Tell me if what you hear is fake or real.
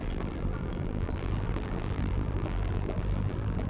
fake